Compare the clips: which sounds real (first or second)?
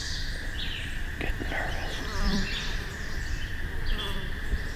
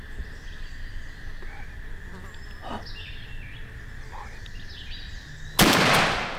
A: second